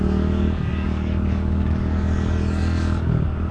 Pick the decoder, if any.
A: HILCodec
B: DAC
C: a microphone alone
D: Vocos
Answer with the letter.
B